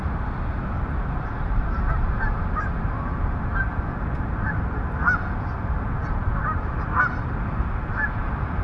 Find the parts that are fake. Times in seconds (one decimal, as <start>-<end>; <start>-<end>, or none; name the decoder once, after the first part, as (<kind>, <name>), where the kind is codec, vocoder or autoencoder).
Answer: 6.0-6.8 (vocoder, BigVGAN v2)